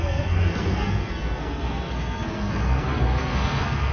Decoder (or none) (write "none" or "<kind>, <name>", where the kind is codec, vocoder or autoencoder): codec, SNAC